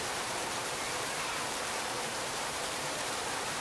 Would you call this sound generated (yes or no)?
yes